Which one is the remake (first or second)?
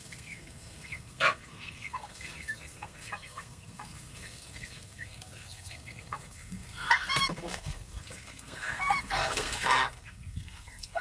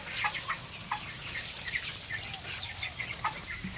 first